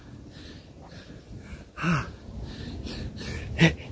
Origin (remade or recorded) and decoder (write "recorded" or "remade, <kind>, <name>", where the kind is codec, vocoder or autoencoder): recorded